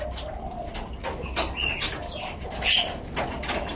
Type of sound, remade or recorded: recorded